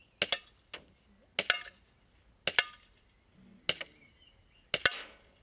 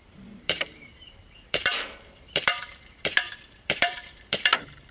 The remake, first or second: second